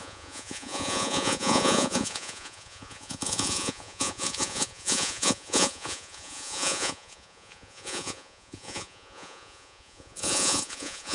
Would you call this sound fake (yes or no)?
yes